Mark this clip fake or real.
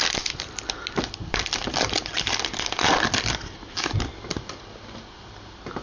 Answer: real